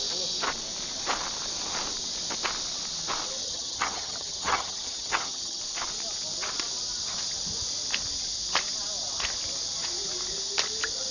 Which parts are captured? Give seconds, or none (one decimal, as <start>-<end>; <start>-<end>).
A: 0.0-3.4; 5.6-11.1